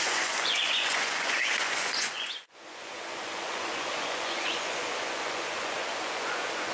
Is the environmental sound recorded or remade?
remade